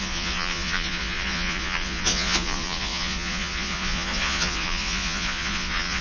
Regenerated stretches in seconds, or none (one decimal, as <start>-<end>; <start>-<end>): 0.0-6.0

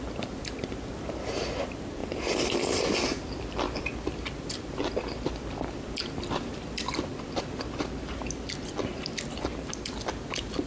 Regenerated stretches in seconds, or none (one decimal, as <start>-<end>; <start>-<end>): none

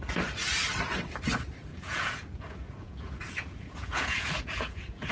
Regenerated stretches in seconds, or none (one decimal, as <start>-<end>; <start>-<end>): 1.7-5.1

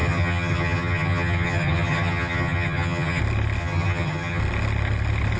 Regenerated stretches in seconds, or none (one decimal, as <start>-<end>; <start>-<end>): 0.0-3.2; 3.6-4.4

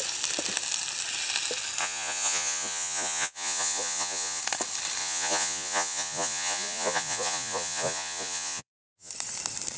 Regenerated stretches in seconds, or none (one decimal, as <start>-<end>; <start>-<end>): 1.8-4.4; 5.0-9.1